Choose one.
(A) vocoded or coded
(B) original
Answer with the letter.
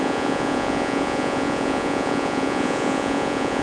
A